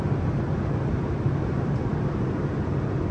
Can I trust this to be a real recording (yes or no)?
yes